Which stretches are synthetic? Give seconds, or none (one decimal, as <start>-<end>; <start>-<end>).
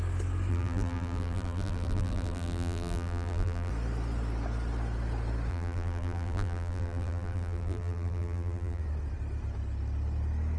0.5-3.7; 5.5-8.8